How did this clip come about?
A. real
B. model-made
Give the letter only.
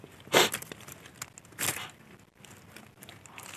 A